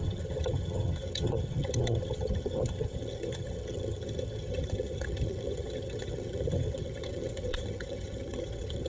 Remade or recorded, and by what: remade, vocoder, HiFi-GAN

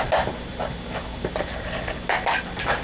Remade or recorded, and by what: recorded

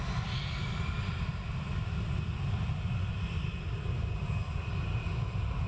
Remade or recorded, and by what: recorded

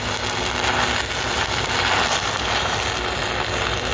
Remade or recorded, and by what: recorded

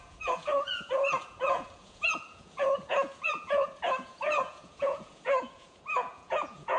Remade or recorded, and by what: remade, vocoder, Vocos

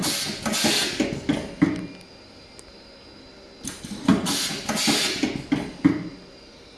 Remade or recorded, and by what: recorded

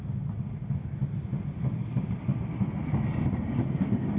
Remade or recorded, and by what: recorded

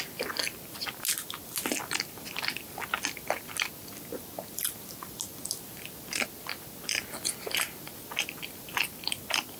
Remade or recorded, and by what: recorded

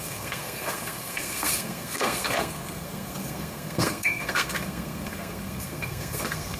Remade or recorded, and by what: remade, codec, SNAC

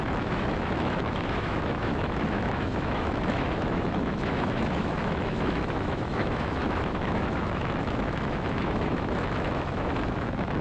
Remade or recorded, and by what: remade, autoencoder, DAC-VAE